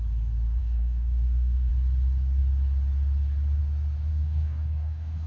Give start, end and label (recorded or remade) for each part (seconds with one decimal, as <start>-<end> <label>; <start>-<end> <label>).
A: 0.0-0.6 recorded; 0.6-1.7 remade; 1.7-4.1 recorded; 4.1-5.3 remade